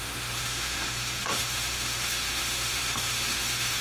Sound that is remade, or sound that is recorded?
remade